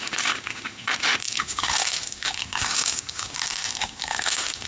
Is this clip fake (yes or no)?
yes